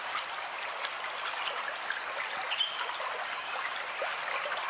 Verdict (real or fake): real